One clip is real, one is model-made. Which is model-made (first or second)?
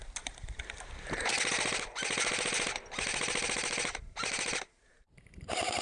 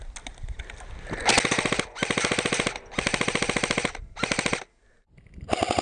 first